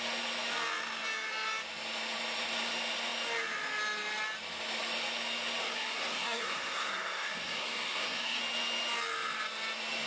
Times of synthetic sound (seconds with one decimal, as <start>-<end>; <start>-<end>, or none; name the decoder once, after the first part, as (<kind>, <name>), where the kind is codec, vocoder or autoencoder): 5.6-8.4 (codec, SNAC)